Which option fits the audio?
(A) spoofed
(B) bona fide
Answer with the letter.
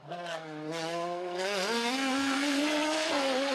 A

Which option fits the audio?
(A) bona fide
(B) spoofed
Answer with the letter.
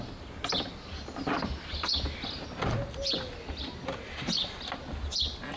A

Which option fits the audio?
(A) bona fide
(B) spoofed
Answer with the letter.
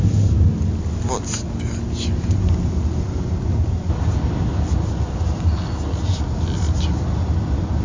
A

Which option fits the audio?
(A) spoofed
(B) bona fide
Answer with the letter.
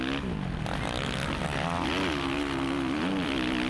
B